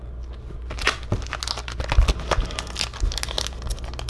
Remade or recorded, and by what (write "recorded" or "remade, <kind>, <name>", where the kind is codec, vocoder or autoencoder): recorded